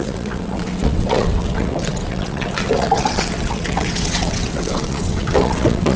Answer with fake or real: fake